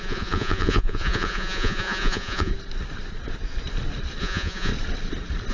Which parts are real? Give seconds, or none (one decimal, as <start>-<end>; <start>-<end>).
2.5-4.2; 4.7-5.5